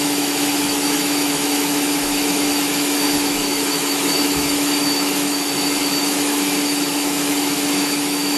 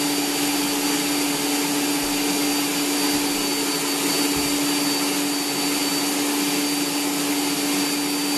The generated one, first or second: first